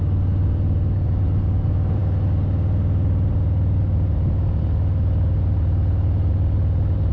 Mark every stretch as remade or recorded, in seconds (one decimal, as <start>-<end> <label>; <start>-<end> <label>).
0.0-7.1 recorded